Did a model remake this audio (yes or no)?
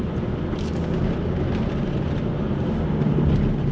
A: no